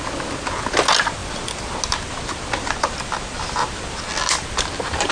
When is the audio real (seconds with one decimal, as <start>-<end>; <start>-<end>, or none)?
0.0-5.1